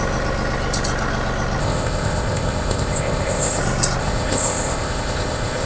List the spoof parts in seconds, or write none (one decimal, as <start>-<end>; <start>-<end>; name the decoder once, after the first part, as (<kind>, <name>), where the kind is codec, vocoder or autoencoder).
1.6-3.6 (codec, ZipCodec); 4.0-5.7